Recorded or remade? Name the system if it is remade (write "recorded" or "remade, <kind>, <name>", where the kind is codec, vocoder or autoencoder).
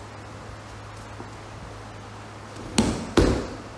recorded